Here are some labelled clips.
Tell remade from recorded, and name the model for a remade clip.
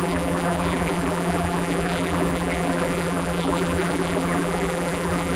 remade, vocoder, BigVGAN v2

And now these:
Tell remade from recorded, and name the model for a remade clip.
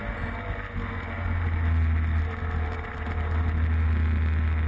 recorded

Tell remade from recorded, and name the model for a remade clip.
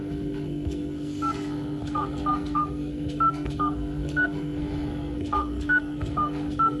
remade, codec, SNAC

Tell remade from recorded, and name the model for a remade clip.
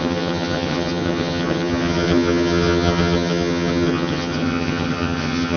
remade, vocoder, HiFi-GAN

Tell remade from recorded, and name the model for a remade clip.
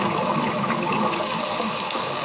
remade, codec, DAC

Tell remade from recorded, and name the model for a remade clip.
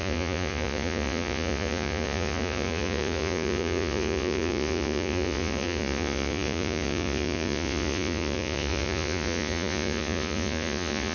remade, vocoder, Vocos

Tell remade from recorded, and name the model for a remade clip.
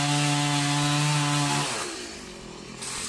recorded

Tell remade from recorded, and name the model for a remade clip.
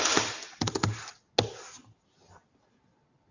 recorded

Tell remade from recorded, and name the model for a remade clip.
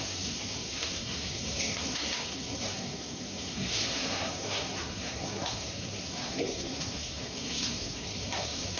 remade, codec, SNAC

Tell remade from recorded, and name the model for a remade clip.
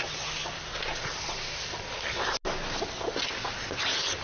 recorded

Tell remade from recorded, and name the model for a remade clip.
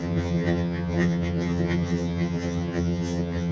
remade, vocoder, HiFi-GAN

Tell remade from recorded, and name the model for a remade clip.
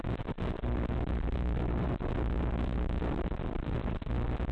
recorded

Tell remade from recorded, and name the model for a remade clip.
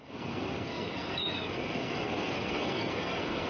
remade, codec, SNAC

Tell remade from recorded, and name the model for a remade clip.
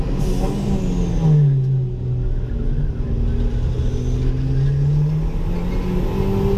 recorded